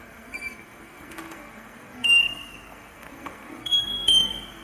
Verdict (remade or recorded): remade